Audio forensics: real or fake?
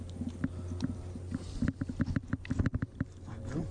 real